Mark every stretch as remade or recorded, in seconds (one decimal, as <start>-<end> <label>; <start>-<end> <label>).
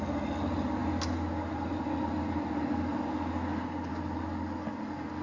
0.0-5.2 recorded